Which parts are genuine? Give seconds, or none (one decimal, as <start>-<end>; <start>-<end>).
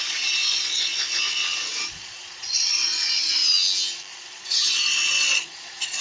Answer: 3.4-4.1